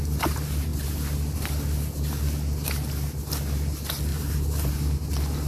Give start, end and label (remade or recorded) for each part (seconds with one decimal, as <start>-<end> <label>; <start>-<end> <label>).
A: 0.0-4.1 recorded; 4.1-4.7 remade; 4.7-5.5 recorded